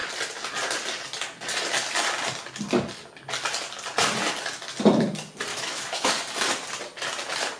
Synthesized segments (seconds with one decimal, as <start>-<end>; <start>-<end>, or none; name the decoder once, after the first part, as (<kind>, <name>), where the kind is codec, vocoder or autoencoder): 5.5-6.1 (autoencoder, DAC-VAE)